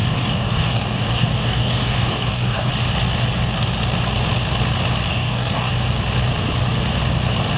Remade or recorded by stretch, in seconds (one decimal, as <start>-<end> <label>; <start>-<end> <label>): 0.0-2.7 remade; 2.7-5.1 recorded; 5.1-5.7 remade; 5.7-7.6 recorded